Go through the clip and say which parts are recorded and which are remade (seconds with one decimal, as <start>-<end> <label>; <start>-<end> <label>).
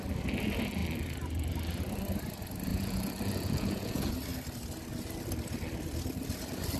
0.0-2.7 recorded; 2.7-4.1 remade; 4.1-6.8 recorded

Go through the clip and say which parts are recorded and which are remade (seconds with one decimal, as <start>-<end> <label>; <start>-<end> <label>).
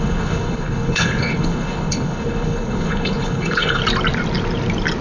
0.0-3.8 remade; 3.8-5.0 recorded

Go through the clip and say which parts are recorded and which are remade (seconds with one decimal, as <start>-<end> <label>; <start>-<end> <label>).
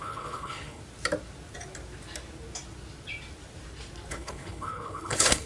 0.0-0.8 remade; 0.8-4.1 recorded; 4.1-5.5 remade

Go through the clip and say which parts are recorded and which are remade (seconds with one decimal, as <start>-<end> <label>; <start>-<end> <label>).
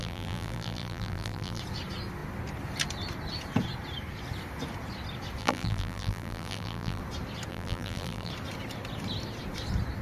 0.0-1.6 remade; 1.6-5.4 recorded; 5.4-7.0 remade; 7.0-7.5 recorded; 7.5-8.3 remade; 8.3-10.0 recorded